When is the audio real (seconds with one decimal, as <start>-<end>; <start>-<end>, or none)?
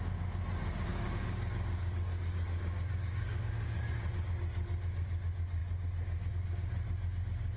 0.0-0.9; 3.9-7.6